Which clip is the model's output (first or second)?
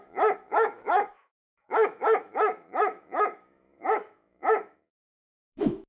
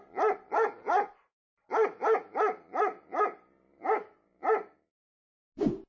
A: first